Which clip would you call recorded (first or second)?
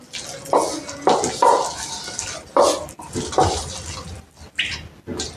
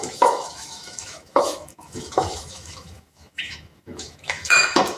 first